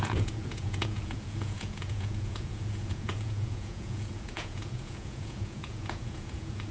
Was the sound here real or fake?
fake